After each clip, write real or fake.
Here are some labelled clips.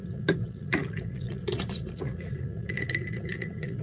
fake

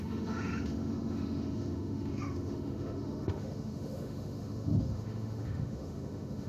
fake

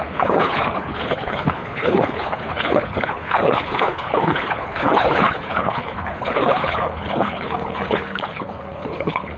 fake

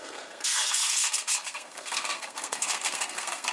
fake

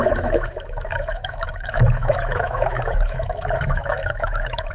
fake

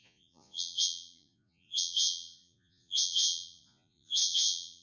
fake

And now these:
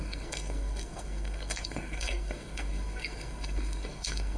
fake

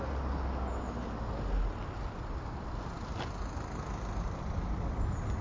real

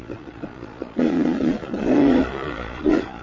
fake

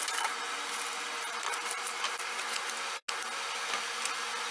real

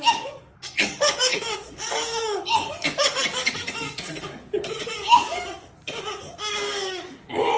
fake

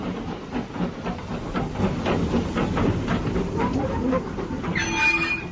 real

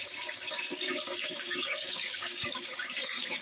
fake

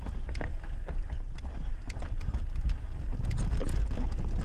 real